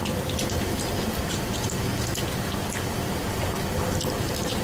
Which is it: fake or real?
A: real